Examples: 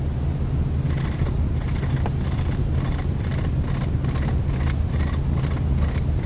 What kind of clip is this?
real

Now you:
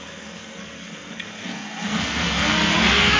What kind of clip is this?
fake